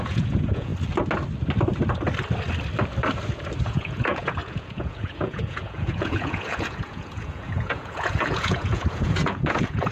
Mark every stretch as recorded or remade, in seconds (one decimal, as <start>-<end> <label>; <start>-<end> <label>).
0.0-0.7 remade; 0.7-3.6 recorded; 3.6-9.9 remade